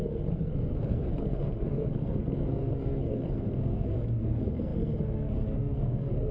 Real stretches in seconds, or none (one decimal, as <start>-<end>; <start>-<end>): none